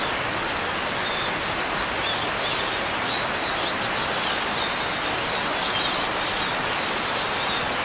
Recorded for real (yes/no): yes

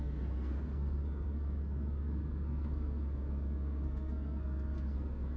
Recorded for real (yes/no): no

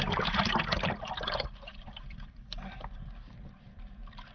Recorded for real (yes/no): no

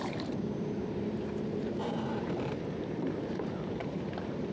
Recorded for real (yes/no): no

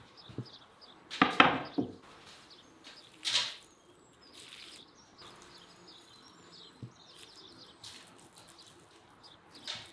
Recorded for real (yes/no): yes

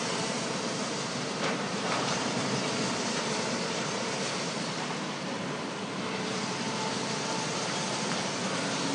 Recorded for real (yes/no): no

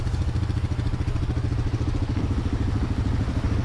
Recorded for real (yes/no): yes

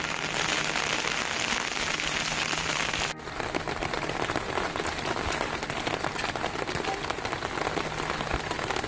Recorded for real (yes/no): yes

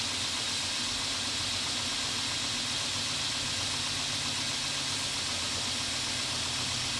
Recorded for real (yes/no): yes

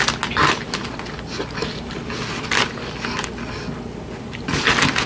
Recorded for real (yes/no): yes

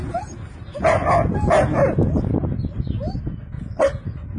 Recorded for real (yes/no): yes